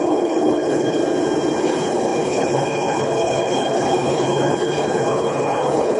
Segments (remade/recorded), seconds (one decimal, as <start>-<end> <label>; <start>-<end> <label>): 0.0-1.0 remade; 1.0-1.6 recorded; 1.6-6.0 remade